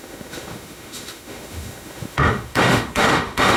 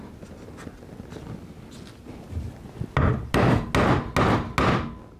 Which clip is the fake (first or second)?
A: first